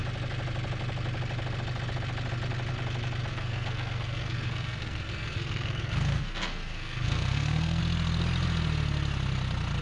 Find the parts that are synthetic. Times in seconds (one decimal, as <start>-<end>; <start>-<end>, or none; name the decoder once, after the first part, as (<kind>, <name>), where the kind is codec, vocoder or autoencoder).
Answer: 3.3-7.8 (codec, SNAC)